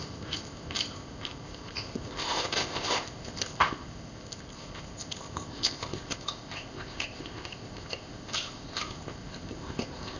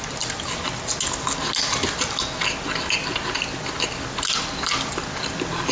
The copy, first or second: first